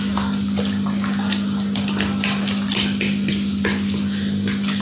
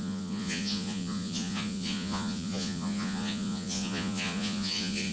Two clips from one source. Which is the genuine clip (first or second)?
first